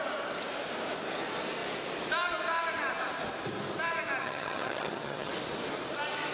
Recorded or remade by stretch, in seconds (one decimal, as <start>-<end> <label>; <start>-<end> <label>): 0.0-4.2 recorded; 4.2-5.3 remade; 5.3-6.3 recorded